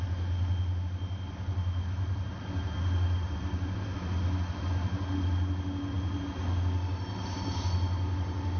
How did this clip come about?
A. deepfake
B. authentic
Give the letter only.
B